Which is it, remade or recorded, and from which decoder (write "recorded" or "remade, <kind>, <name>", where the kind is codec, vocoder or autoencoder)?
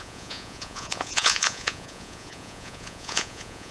remade, vocoder, Vocos